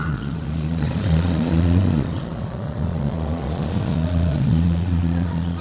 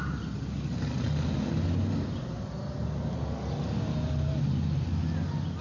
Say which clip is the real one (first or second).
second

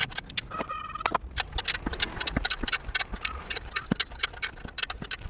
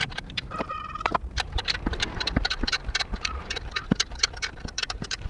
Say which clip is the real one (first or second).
first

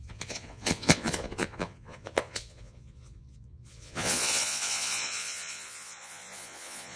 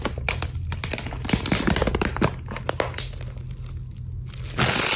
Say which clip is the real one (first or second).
second